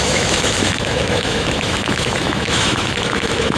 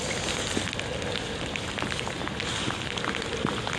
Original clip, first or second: second